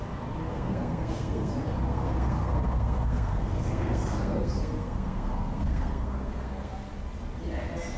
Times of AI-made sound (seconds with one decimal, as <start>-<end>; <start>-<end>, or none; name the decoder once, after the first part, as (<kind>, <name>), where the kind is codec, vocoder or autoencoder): 0.5-1.5 (codec, SNAC); 1.9-6.7